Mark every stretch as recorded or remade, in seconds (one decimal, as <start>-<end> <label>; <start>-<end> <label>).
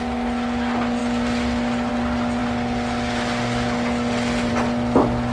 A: 0.0-5.3 recorded